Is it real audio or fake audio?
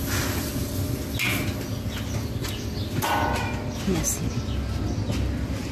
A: real